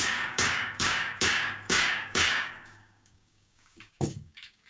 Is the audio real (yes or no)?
no